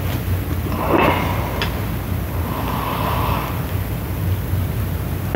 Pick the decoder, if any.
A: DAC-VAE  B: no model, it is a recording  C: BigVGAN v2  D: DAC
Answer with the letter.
B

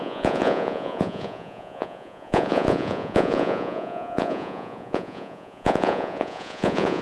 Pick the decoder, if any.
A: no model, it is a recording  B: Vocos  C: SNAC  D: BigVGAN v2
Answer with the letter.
B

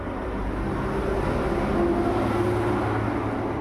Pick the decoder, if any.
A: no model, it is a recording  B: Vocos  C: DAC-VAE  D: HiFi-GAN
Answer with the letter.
A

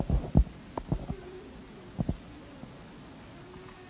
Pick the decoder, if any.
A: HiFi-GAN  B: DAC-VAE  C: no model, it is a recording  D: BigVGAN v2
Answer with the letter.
C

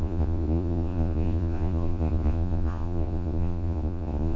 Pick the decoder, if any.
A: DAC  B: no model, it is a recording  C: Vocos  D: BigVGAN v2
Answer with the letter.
C